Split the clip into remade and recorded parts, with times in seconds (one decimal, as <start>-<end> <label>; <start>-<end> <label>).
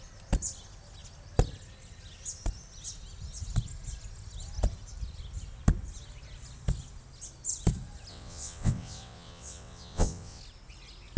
0.0-8.1 recorded; 8.1-10.4 remade; 10.4-11.2 recorded